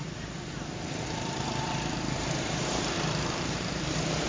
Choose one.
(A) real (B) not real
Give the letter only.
B